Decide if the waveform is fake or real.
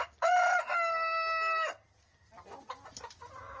real